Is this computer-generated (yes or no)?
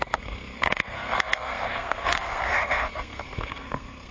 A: yes